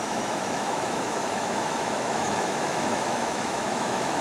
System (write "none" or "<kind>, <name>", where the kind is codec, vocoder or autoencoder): autoencoder, DAC-VAE